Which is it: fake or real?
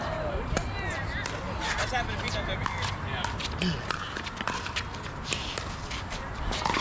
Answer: real